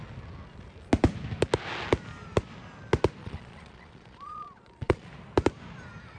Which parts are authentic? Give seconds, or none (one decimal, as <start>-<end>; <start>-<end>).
0.0-3.2; 5.1-6.2